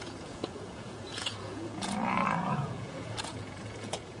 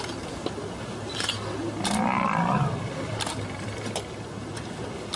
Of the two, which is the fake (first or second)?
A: first